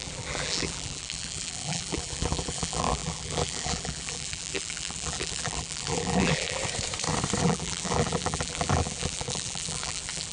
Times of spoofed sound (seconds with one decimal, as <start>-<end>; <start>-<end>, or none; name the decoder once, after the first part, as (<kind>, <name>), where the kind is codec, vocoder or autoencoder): 0.0-6.6 (vocoder, BigVGAN v2); 7.4-10.3